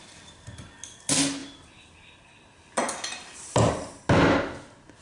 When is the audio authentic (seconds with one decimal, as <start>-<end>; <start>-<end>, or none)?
0.0-5.0